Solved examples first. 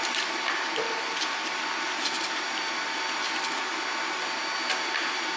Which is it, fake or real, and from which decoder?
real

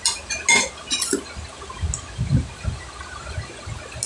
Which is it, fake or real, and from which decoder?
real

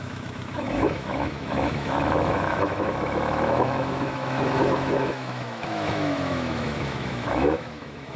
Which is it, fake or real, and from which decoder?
fake, autoencoder, DAC-VAE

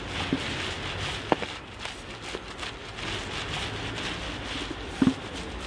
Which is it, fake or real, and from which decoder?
real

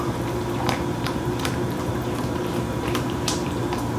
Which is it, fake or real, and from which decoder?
fake, vocoder, BigVGAN v2